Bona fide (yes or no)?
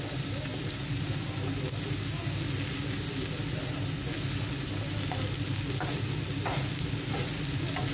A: yes